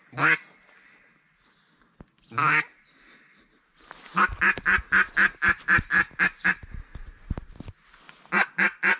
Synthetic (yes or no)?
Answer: no